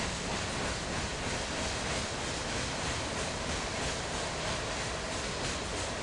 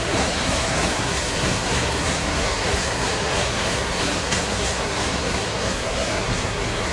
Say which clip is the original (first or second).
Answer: first